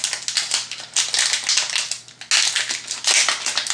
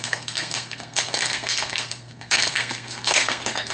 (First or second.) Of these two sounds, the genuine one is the first